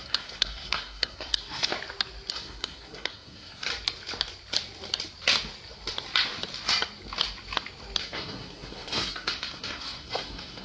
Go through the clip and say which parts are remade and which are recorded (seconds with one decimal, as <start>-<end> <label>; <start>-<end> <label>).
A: 0.0-1.7 remade; 1.7-2.3 recorded; 2.3-3.7 remade; 3.7-8.0 recorded; 8.0-10.6 remade